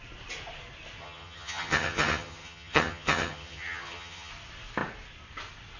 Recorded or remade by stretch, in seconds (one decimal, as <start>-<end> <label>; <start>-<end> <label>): 0.0-1.0 recorded; 1.0-4.3 remade; 4.3-5.8 recorded